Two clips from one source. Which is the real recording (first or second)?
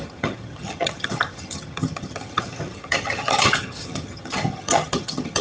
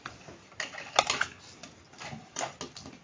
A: second